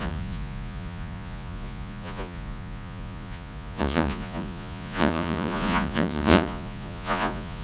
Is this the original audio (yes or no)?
no